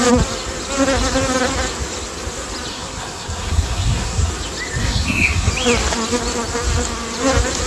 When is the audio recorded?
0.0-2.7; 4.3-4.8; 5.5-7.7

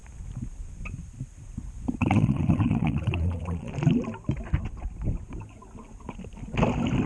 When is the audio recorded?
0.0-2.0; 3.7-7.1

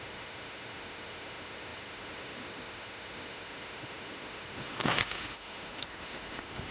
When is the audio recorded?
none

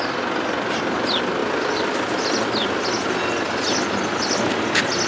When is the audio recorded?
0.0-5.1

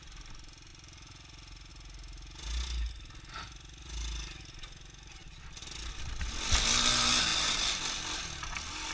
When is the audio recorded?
0.0-8.9

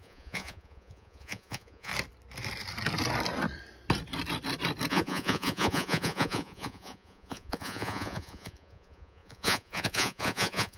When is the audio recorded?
1.9-4.9

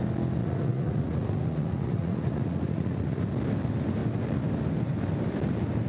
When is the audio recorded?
0.0-0.4; 3.2-5.9